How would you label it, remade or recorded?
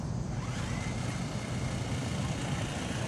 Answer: recorded